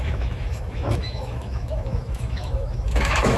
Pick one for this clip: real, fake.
fake